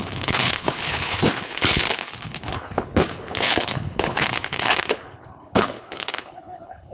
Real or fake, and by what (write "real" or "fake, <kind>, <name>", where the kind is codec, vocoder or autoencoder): fake, codec, HILCodec